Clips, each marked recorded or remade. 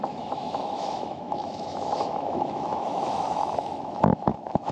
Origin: remade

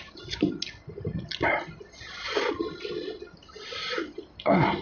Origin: recorded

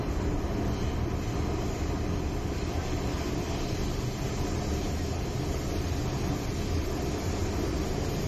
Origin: recorded